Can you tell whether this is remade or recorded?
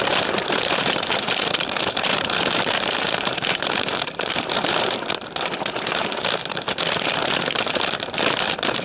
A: remade